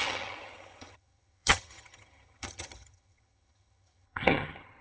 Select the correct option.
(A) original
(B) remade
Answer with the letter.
B